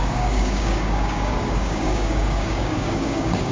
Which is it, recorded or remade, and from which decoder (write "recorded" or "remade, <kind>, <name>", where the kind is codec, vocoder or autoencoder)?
remade, codec, DAC